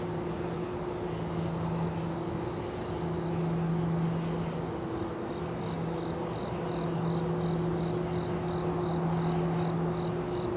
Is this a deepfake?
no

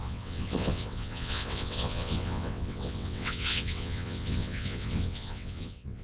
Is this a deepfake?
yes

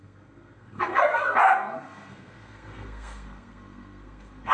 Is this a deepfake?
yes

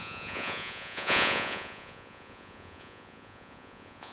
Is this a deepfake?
yes